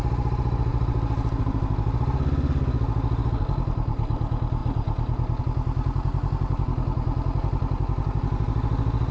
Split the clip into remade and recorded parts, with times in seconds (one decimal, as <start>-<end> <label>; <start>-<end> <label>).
0.0-9.1 recorded